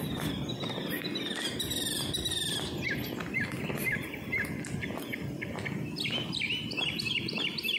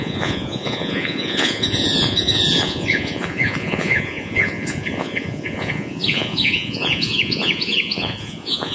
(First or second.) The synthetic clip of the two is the second